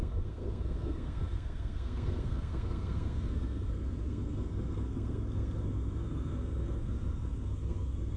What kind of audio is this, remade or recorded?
remade